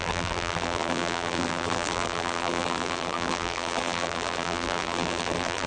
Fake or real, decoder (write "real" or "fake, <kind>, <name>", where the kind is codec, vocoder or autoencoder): fake, vocoder, BigVGAN v2